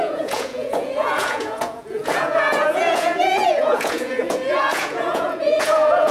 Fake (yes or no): yes